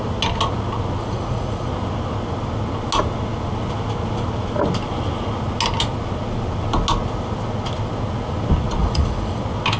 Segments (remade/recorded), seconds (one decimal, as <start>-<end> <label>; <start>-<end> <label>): 0.0-1.0 recorded; 1.0-1.7 remade; 1.7-8.8 recorded; 8.8-9.4 remade; 9.4-9.8 recorded